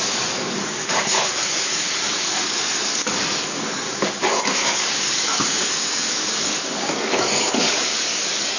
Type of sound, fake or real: fake